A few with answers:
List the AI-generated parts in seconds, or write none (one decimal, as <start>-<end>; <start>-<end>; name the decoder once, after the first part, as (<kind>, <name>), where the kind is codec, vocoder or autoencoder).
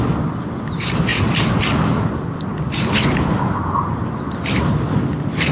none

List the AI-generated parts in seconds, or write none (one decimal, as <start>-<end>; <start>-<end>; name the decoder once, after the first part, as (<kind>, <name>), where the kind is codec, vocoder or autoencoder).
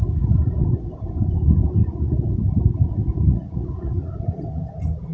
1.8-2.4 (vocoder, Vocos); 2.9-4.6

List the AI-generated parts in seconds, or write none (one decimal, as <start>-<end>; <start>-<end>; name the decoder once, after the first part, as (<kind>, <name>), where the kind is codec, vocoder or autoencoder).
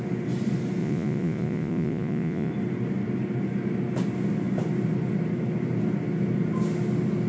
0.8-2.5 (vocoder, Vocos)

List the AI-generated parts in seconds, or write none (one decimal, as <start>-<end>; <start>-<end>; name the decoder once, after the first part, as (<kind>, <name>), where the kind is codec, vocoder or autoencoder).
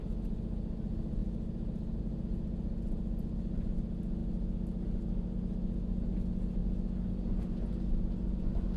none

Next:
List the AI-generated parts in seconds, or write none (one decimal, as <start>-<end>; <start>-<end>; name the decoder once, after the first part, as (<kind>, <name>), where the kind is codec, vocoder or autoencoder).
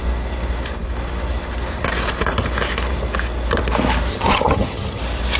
4.1-5.0 (vocoder, HiFi-GAN)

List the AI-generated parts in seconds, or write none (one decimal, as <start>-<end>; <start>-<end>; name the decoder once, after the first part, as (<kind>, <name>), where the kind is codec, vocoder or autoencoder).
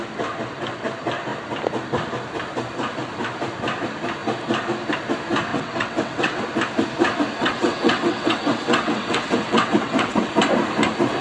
5.5-6.4 (vocoder, WaveNeXt); 7.4-10.3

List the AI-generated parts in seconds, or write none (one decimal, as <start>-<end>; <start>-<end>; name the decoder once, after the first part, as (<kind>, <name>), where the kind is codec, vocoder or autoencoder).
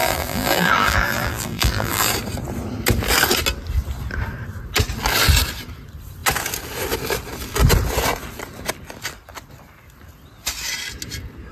0.0-2.1 (vocoder, BigVGAN v2)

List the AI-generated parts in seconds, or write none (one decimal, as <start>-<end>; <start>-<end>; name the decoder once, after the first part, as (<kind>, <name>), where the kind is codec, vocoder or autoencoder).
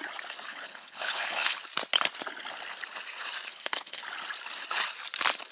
0.5-1.6 (codec, HILCodec); 3.5-4.0